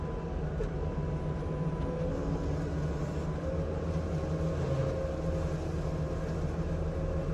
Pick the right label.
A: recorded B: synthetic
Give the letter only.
A